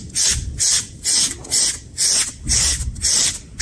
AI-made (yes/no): no